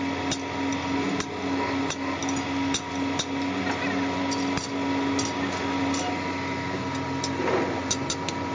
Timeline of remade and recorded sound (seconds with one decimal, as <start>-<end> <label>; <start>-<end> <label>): 0.0-8.5 recorded